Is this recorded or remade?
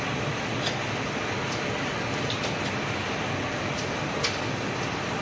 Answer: recorded